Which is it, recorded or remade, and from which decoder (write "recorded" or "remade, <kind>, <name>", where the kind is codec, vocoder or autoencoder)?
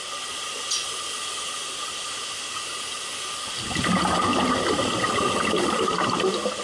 recorded